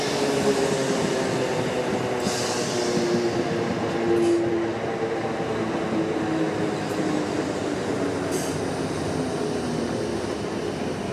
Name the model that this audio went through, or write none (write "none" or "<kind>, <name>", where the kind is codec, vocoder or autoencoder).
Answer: none